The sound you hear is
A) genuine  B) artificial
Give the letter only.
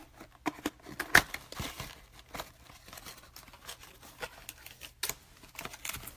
A